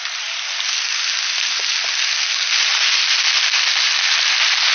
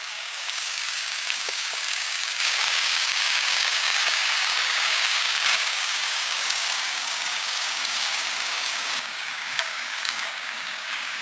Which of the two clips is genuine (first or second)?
first